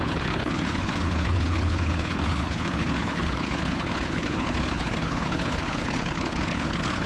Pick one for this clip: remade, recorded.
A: remade